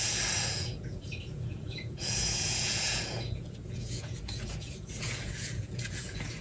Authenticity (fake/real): fake